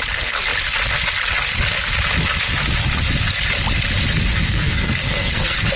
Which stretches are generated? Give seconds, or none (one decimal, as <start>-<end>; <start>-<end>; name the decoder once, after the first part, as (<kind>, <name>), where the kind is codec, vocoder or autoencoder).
4.3-5.8 (codec, SNAC)